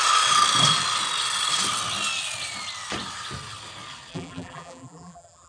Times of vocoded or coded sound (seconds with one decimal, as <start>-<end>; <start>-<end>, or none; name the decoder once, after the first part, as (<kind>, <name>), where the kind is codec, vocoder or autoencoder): 4.1-5.5 (vocoder, BigVGAN v2)